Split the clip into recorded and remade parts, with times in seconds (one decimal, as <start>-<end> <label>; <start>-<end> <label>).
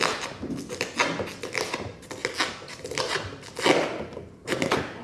0.0-5.0 recorded